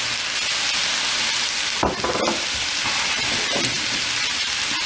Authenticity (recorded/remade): recorded